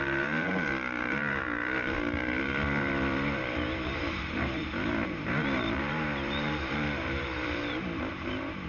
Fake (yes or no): yes